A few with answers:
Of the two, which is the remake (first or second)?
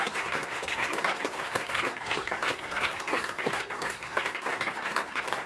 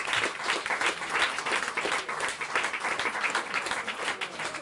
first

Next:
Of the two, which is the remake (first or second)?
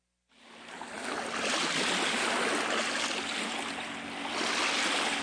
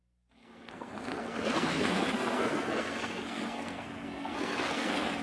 second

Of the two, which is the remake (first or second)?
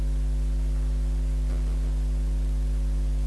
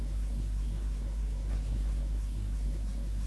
second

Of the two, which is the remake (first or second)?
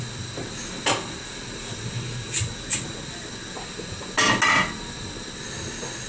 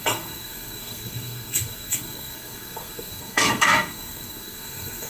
second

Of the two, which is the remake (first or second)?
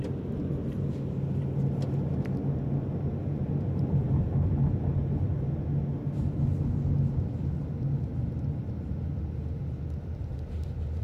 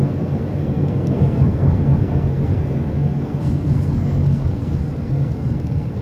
second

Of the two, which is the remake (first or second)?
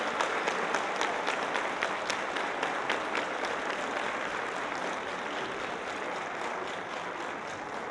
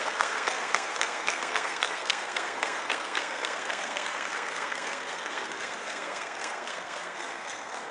second